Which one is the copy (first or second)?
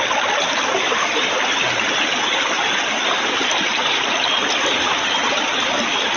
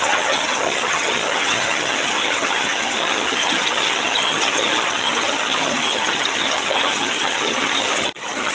second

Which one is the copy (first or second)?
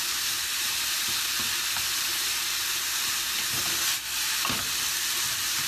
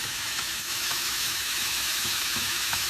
second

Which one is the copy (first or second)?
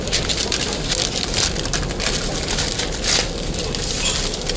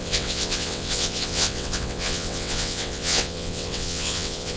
second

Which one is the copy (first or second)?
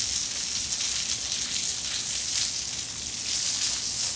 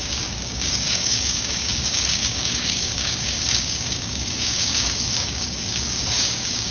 second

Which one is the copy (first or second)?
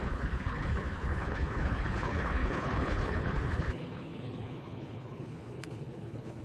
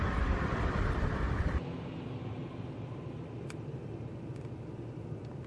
first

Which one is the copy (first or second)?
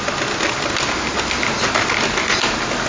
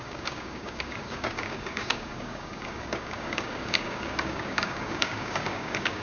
second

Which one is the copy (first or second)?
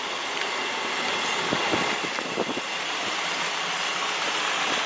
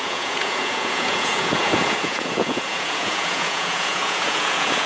second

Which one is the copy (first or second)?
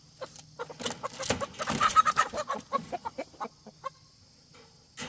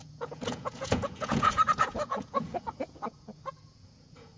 second